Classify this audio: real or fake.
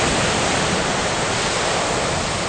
real